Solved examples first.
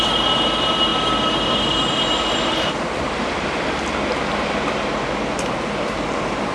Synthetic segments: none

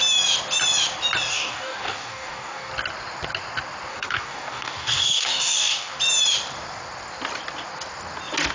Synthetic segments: 1.3-2.7 (codec, DAC); 3.9-6.0

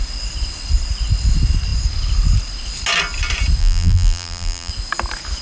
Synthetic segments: 3.6-4.7 (vocoder, BigVGAN v2)

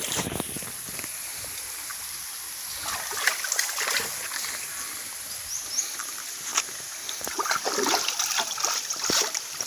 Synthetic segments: 6.5-9.7 (vocoder, BigVGAN v2)

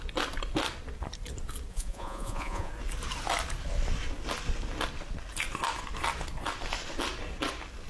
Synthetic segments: 1.7-2.7 (vocoder, Vocos)

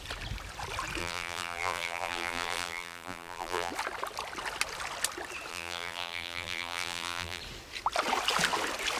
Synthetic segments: 1.0-3.7 (vocoder, BigVGAN v2); 5.5-7.4

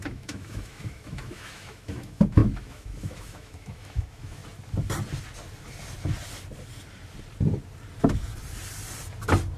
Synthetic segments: 0.0-4.4 (autoencoder, DAC-VAE)